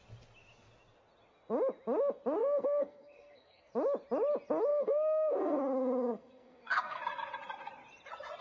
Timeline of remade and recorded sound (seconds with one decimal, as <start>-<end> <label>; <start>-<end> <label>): 0.0-2.4 recorded; 2.4-3.7 remade; 3.7-4.7 recorded; 4.7-7.0 remade; 7.0-8.4 recorded